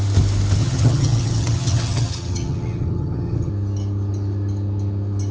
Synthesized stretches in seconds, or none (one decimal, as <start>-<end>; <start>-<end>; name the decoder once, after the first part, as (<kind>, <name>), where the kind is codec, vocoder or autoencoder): 0.6-3.5 (vocoder, HiFi-GAN)